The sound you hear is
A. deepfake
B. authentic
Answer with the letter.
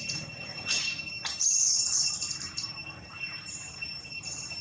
A